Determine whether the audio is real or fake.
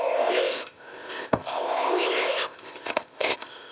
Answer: fake